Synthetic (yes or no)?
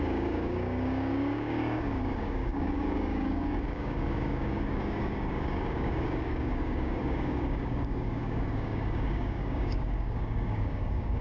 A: yes